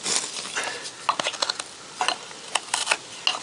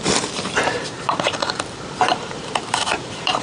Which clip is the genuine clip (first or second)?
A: first